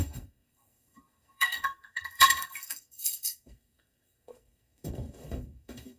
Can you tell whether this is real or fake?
fake